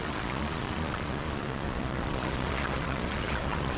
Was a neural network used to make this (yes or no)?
yes